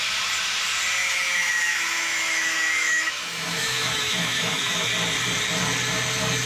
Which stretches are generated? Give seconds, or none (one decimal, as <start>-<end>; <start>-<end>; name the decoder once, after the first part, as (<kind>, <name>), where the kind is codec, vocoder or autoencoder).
1.0-4.9 (autoencoder, DAC-VAE)

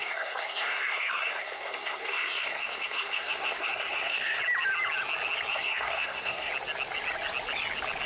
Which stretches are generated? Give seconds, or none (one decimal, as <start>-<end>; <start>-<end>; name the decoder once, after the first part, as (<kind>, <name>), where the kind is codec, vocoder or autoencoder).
0.0-4.4 (codec, SNAC); 5.5-6.5

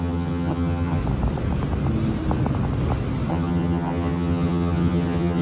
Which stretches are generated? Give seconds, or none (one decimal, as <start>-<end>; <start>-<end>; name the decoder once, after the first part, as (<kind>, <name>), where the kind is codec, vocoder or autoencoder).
0.0-1.0 (vocoder, HiFi-GAN); 3.3-5.4

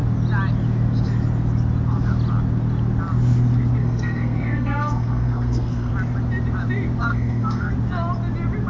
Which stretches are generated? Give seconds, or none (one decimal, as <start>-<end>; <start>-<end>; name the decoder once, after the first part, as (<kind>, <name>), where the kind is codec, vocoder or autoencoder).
3.8-5.9 (codec, SNAC); 7.1-7.7

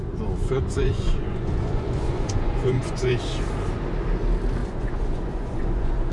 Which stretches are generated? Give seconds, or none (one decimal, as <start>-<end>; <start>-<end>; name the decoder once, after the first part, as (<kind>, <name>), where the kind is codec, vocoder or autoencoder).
0.4-3.1 (vocoder, Vocos); 4.6-6.1